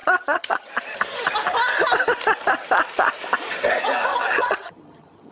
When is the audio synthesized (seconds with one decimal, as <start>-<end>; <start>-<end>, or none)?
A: 0.0-0.7; 4.1-5.3